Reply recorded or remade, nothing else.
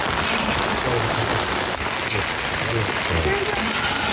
recorded